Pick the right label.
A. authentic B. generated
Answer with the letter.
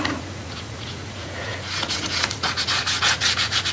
B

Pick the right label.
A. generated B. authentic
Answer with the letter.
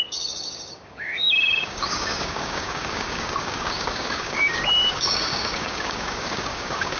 A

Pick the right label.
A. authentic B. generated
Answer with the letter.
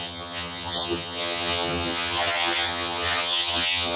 B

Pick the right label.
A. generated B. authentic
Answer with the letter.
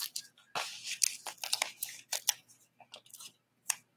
B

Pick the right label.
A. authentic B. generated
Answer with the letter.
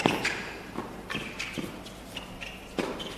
A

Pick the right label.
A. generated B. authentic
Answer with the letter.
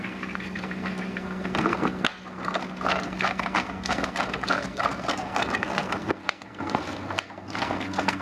A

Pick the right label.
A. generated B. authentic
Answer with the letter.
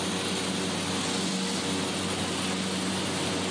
B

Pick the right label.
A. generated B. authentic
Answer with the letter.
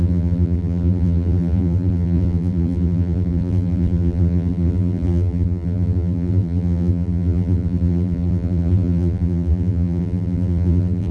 A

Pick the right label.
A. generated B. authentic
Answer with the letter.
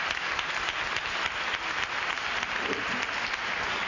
B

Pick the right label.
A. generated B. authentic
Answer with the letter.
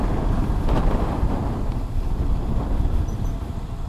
B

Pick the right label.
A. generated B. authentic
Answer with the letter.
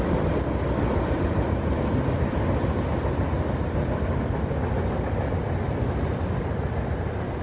B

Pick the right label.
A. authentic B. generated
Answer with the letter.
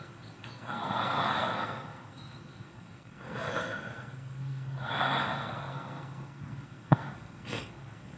B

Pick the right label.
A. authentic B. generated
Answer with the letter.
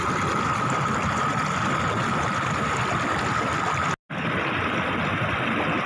A